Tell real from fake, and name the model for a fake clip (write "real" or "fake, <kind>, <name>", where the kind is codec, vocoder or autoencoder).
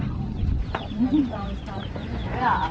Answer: fake, vocoder, Vocos